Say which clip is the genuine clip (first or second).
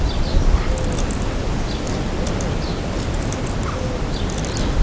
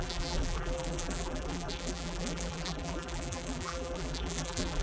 first